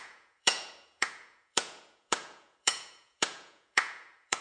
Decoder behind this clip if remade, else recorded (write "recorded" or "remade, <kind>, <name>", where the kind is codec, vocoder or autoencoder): remade, vocoder, Vocos